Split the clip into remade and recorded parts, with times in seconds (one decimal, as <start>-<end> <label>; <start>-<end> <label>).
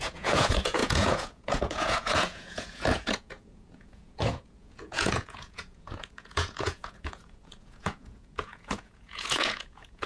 0.0-10.1 remade